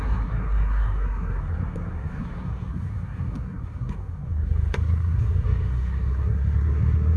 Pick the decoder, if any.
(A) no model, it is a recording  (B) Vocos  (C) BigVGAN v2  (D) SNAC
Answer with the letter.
D